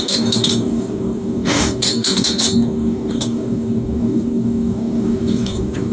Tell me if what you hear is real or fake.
fake